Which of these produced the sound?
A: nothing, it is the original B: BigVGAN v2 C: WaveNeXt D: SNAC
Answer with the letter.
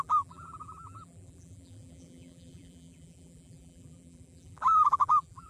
B